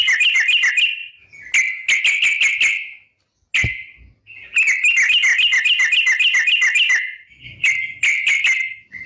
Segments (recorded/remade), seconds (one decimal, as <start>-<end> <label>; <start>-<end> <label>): 0.0-9.1 recorded